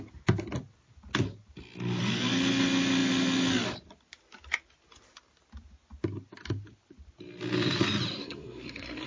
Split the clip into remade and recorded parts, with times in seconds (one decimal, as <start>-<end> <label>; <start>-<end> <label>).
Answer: 0.0-8.2 recorded; 8.2-9.1 remade